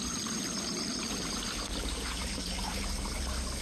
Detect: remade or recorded recorded